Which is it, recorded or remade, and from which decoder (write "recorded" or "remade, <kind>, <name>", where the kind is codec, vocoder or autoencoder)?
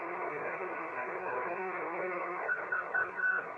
remade, codec, SNAC